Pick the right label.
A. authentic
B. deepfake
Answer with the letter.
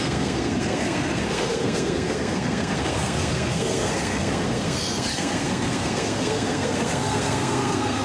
B